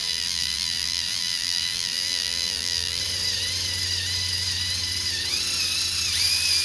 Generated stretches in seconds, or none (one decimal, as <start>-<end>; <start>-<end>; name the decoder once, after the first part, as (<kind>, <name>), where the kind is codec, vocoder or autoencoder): 0.0-3.0 (vocoder, BigVGAN v2)